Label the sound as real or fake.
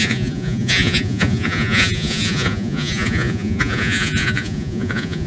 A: fake